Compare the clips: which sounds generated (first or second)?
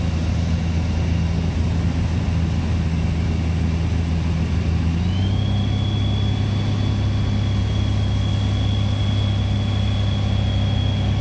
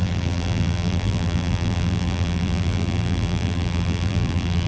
second